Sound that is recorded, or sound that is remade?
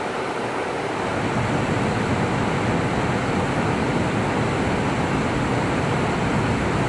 recorded